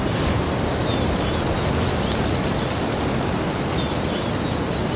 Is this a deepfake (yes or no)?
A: no